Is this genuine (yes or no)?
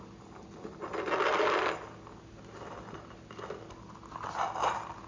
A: yes